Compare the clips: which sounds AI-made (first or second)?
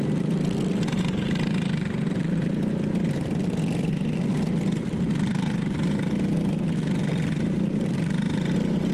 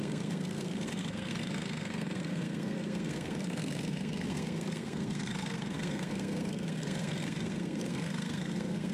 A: second